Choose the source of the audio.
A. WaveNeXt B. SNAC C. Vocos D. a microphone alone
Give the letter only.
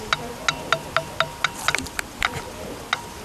D